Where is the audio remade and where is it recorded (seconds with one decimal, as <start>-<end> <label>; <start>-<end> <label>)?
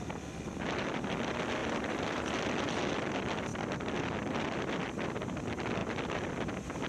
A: 0.0-1.6 recorded; 1.6-2.3 remade; 2.3-6.9 recorded